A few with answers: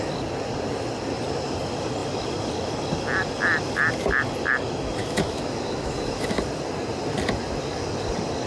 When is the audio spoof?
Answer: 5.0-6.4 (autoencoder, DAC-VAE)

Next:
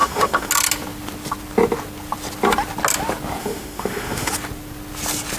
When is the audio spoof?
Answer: 0.0-0.5 (autoencoder, DAC-VAE); 3.4-4.3

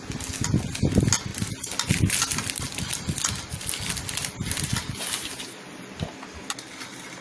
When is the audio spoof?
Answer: none

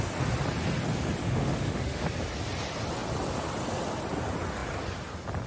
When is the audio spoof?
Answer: 1.2-2.0 (autoencoder, DAC-VAE)

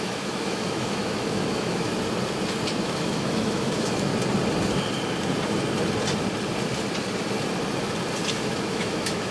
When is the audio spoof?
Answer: 0.0-1.9 (autoencoder, DAC-VAE); 2.8-4.1; 8.3-9.3

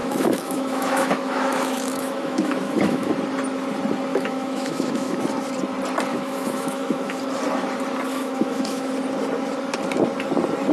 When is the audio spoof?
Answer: 0.0-3.1 (autoencoder, DAC-VAE); 4.1-5.2; 6.1-7.2; 8.1-8.9

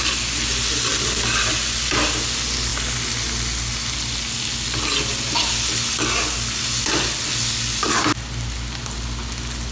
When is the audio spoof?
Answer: none

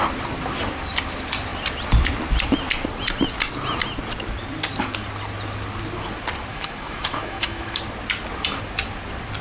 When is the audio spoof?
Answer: 6.5-7.8 (autoencoder, DAC-VAE)